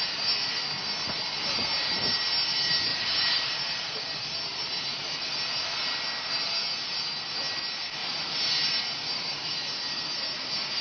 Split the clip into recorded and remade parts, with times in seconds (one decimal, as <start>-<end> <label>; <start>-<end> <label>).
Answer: 0.0-2.9 recorded; 2.9-4.0 remade; 4.0-4.5 recorded; 4.5-5.3 remade; 5.3-8.0 recorded; 8.0-9.5 remade; 9.5-10.8 recorded